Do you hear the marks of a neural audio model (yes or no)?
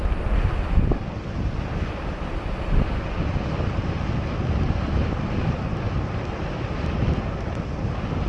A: no